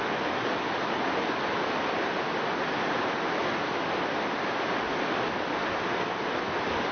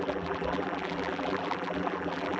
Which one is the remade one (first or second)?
second